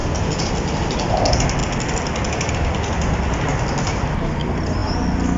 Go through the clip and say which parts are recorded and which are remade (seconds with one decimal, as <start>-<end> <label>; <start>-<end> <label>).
0.0-5.4 recorded